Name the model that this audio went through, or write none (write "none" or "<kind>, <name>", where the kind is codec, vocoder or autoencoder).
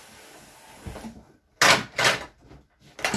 none